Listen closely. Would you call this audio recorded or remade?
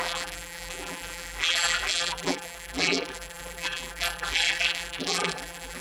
remade